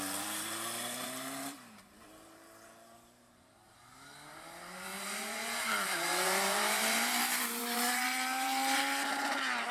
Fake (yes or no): yes